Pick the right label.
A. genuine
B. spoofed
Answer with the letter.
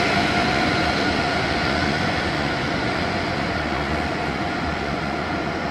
B